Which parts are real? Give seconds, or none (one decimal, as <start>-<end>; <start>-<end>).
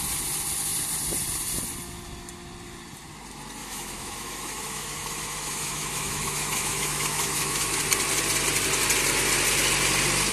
0.0-3.6; 7.8-10.3